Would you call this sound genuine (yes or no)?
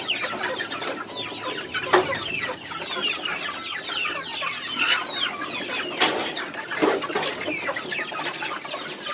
yes